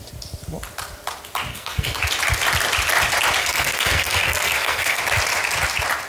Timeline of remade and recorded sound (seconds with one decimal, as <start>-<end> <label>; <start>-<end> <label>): 0.0-1.5 recorded; 1.5-2.0 remade; 2.0-3.4 recorded; 3.4-5.0 remade; 5.0-6.1 recorded